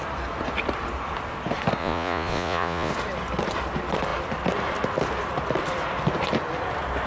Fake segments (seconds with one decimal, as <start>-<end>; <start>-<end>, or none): 1.8-2.9